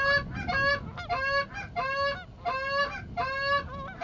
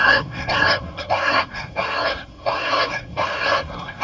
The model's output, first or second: second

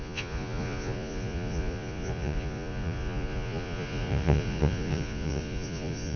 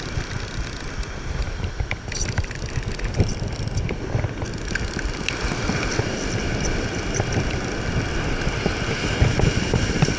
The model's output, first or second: first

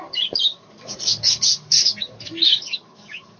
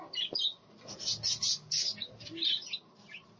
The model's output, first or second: first